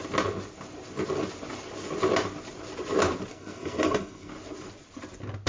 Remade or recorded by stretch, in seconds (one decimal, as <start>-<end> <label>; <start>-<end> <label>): 0.0-3.3 recorded; 3.3-4.3 remade; 4.3-5.5 recorded